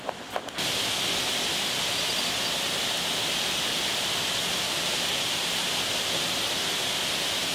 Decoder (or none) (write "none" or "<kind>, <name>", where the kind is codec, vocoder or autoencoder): none